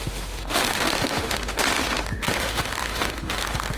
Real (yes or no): no